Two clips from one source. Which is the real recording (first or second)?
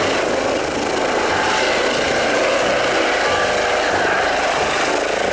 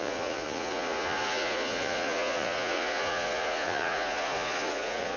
first